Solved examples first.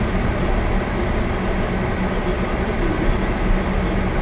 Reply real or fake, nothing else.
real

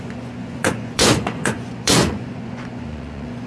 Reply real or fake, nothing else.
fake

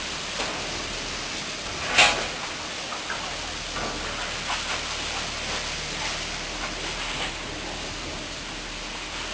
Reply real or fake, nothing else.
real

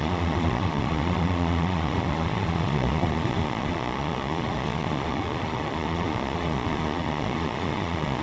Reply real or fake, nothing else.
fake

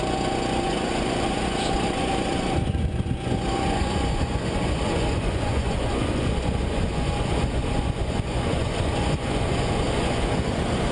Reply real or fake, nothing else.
fake